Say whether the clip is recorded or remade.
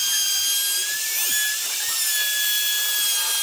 recorded